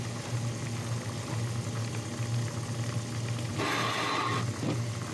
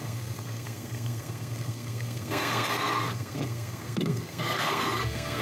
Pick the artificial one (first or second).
second